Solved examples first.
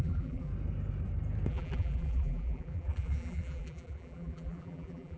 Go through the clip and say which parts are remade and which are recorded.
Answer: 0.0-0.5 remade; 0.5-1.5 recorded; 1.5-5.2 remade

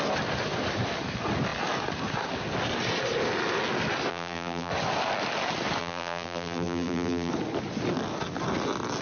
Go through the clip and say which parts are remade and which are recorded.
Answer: 0.0-4.1 recorded; 4.1-4.7 remade; 4.7-5.8 recorded; 5.8-7.3 remade; 7.3-9.0 recorded

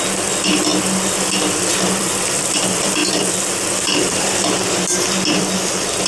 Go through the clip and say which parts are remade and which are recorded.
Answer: 0.0-3.0 remade; 3.0-3.8 recorded; 3.8-6.1 remade